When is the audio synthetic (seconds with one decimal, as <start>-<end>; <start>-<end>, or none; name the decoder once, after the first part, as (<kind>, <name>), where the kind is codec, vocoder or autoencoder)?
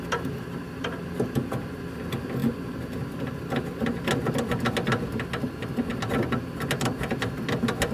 none